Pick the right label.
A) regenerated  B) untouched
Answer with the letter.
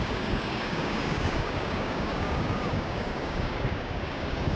A